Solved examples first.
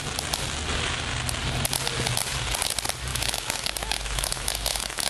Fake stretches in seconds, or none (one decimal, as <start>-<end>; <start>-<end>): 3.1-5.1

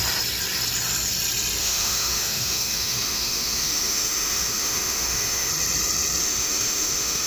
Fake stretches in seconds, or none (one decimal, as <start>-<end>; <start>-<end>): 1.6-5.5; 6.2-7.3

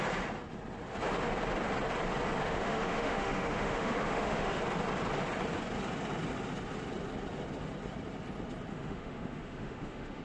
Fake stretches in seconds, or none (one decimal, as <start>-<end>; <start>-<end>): 2.4-4.6; 8.7-10.2

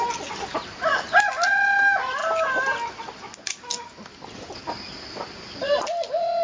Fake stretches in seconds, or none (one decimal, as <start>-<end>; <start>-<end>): none